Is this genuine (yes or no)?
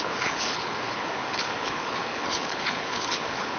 no